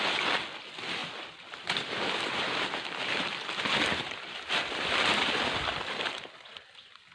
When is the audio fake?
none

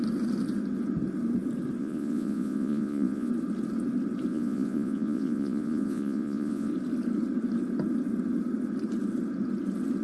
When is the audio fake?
1.8-3.3 (vocoder, Vocos); 4.3-6.7

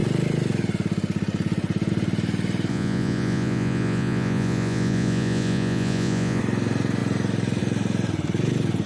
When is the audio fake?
2.7-6.4 (vocoder, Vocos)

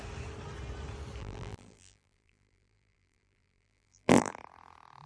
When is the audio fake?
1.2-4.3 (vocoder, BigVGAN v2)

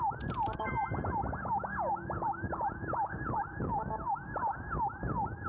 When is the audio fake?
none